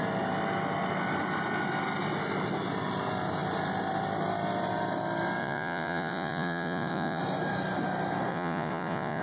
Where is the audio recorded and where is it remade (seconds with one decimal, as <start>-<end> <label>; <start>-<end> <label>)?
0.0-5.4 recorded; 5.4-7.2 remade; 7.2-8.3 recorded; 8.3-9.2 remade